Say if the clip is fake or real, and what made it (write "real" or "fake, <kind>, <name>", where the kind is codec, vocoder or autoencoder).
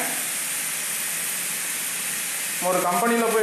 real